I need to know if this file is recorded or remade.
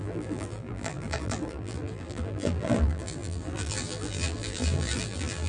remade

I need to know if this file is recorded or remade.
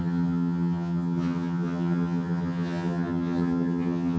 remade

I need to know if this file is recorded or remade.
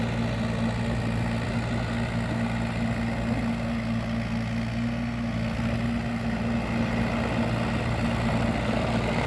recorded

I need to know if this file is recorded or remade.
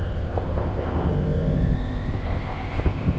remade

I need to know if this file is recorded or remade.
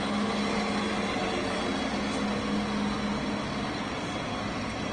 recorded